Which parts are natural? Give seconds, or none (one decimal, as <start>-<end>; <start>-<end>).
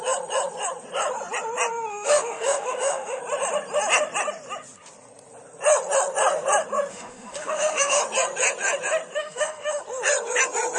0.0-1.9; 3.2-6.9; 8.0-9.2; 9.8-10.8